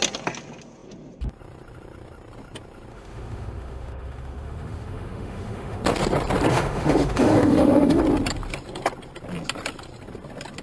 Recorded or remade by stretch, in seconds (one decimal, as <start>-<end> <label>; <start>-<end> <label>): 0.0-2.9 recorded; 2.9-5.8 remade; 5.8-6.5 recorded; 6.5-8.0 remade; 8.0-10.6 recorded